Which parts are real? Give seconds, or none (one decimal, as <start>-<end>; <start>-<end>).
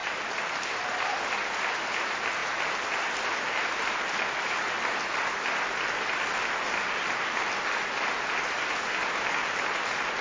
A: 0.0-10.2